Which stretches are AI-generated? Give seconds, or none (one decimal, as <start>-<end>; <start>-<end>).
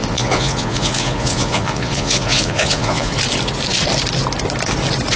0.0-3.1